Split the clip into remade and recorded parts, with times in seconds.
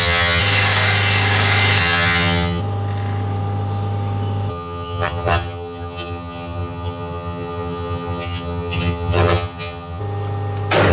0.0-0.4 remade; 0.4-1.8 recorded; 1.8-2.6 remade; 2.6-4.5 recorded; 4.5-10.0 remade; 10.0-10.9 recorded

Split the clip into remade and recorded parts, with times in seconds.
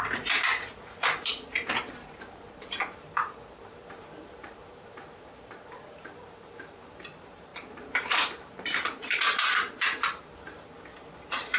0.0-11.6 remade